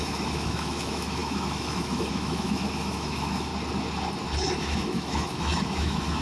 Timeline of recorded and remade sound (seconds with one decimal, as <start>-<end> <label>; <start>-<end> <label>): 0.0-3.5 remade; 3.5-4.6 recorded; 4.6-6.2 remade

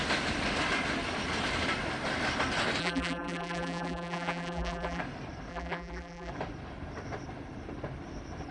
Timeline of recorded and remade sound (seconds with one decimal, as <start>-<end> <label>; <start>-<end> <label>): 0.0-2.8 recorded; 2.8-5.0 remade; 5.0-5.5 recorded; 5.5-6.3 remade; 6.3-8.5 recorded

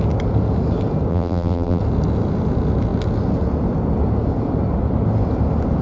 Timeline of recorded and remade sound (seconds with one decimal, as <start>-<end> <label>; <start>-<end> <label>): 0.0-1.1 recorded; 1.1-1.8 remade; 1.8-5.8 recorded

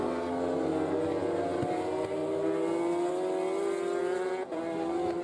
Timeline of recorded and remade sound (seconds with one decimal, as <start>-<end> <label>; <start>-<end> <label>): 0.0-4.0 recorded; 4.0-4.6 remade; 4.6-5.2 recorded

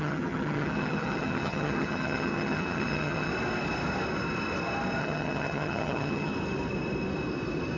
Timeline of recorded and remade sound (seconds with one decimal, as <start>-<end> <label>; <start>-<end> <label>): 0.0-3.3 remade; 3.3-5.0 recorded; 5.0-6.3 remade; 6.3-7.8 recorded

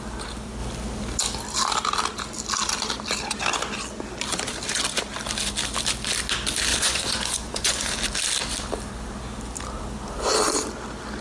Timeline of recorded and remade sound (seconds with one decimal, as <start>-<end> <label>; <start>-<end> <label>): 0.0-6.7 recorded; 6.7-7.9 remade; 7.9-11.2 recorded

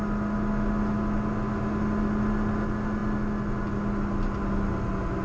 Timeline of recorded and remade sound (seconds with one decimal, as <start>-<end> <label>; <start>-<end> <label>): 0.0-5.2 recorded